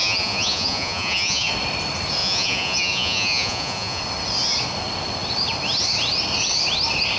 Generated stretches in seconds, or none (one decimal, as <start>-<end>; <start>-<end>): 0.0-1.5; 2.2-4.0